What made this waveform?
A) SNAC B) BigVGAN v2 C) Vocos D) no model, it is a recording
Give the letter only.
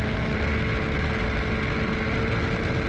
D